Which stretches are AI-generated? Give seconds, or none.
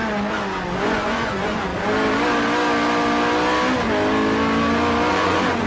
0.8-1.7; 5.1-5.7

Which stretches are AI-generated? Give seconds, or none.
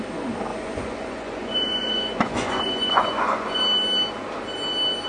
0.5-3.6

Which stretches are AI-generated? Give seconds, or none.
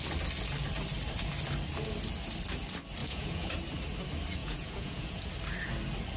3.0-3.5; 4.4-5.3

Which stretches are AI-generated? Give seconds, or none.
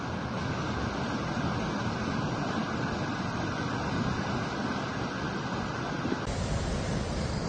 none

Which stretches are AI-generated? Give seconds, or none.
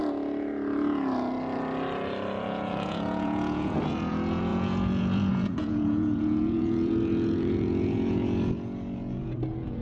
2.4-9.8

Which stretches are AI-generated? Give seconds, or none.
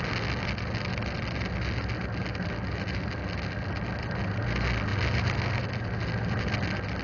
none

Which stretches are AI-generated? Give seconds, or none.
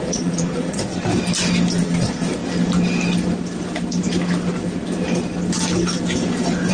0.0-0.9; 1.8-2.4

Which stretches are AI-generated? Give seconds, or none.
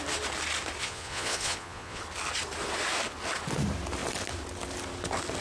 0.8-2.0